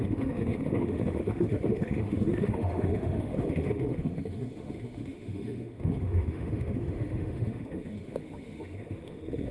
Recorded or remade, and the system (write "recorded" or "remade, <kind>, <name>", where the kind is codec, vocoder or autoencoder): remade, autoencoder, DAC-VAE